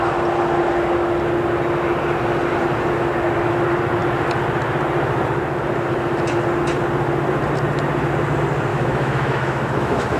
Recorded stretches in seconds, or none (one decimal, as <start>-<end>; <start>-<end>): 0.0-8.7